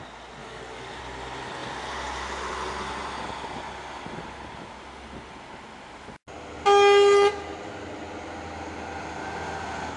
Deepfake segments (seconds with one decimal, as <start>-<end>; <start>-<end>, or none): 0.4-1.0